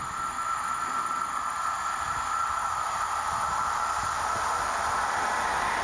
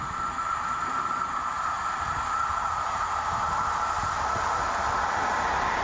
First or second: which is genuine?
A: first